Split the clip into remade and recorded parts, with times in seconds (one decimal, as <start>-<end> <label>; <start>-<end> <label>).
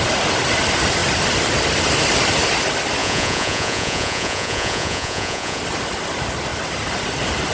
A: 0.0-3.0 recorded; 3.0-5.6 remade; 5.6-7.5 recorded